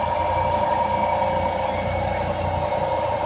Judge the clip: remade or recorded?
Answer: recorded